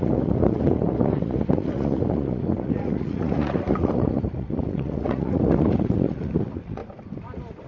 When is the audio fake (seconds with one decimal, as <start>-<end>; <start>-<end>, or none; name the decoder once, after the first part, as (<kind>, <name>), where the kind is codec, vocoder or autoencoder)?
0.0-6.8 (vocoder, Vocos)